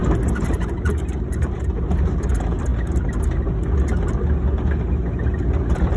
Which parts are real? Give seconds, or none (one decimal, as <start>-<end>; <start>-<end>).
0.0-0.5; 2.7-6.0